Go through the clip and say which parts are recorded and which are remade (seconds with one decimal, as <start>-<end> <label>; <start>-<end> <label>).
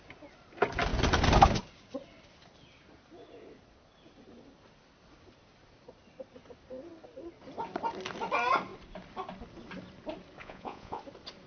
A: 0.0-10.4 recorded; 10.4-11.0 remade; 11.0-11.5 recorded